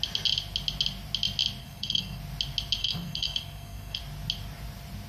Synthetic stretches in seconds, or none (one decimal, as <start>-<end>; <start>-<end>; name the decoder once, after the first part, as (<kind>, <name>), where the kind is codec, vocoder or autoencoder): 1.6-2.2 (codec, SNAC); 2.8-4.0